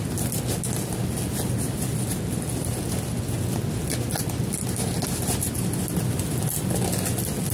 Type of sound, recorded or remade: recorded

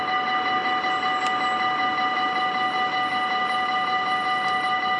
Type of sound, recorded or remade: recorded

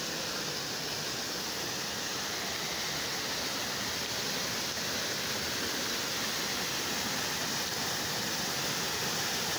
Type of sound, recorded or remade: recorded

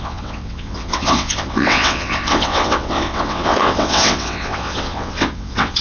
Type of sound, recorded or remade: remade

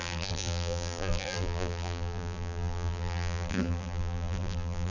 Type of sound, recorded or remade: remade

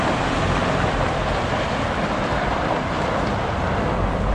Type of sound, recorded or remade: remade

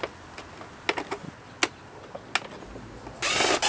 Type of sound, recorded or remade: recorded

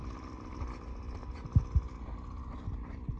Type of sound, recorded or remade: recorded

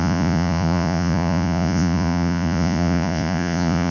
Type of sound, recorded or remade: remade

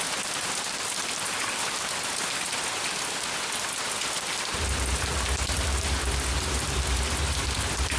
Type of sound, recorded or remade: recorded